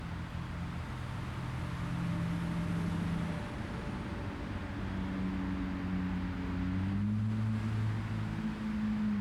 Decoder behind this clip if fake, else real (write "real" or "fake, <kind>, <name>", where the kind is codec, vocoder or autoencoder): real